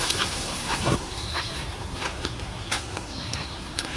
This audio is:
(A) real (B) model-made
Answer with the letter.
B